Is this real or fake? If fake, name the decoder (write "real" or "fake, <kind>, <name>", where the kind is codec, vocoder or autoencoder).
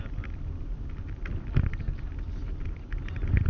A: real